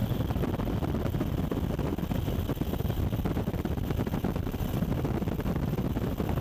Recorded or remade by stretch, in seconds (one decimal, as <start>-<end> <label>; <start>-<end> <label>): 0.0-6.4 recorded